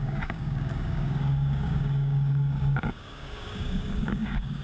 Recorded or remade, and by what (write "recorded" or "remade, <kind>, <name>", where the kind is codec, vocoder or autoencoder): remade, codec, DAC